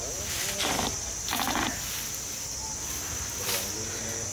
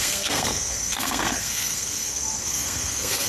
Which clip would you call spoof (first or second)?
second